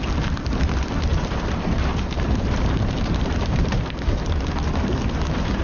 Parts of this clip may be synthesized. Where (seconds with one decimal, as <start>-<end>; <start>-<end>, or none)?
1.1-4.5

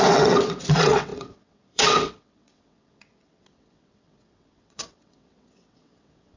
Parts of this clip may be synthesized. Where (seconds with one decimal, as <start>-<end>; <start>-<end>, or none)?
0.0-6.4

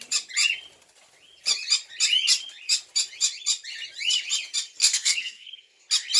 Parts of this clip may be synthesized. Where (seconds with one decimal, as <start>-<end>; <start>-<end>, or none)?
4.8-5.8

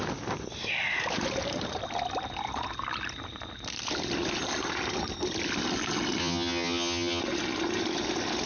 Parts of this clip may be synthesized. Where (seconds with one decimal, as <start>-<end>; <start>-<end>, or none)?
6.2-7.2

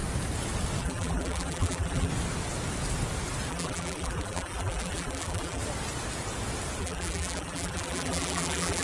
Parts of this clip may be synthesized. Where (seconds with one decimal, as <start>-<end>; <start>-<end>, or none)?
0.8-2.1; 3.5-5.6; 6.8-8.8

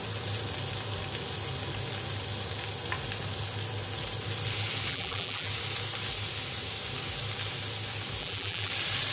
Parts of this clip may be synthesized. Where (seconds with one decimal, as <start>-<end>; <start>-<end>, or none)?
4.9-5.5; 8.2-8.7